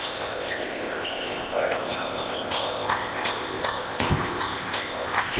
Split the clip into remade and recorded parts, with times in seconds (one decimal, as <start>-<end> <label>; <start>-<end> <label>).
0.0-5.4 remade